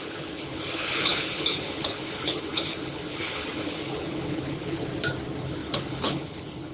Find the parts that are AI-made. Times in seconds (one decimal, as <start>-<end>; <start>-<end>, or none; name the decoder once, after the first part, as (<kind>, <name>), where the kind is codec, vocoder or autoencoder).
0.0-4.9 (codec, HILCodec); 5.4-6.7